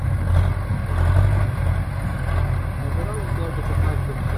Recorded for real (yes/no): yes